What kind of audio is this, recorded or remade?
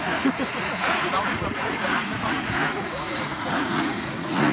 remade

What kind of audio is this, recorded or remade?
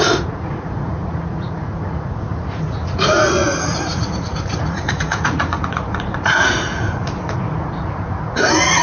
remade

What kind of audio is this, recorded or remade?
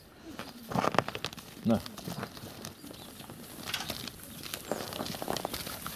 recorded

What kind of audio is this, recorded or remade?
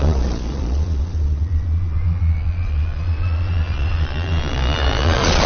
remade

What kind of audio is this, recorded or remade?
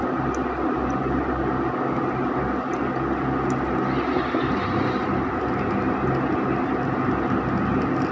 recorded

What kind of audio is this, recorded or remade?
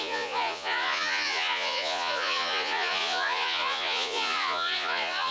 remade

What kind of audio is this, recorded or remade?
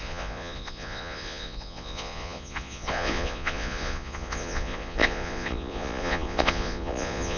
remade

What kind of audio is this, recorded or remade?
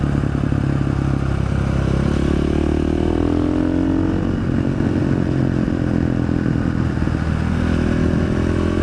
recorded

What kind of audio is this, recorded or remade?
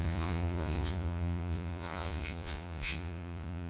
remade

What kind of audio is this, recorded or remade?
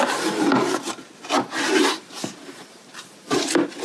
recorded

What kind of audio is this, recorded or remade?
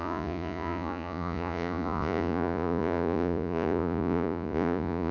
remade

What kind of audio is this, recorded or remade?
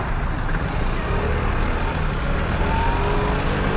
recorded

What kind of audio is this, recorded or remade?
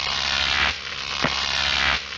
recorded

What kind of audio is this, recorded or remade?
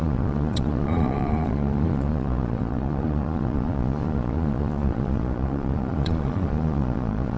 remade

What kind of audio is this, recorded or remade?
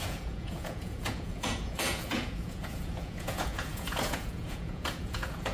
remade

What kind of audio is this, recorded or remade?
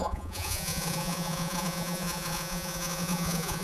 remade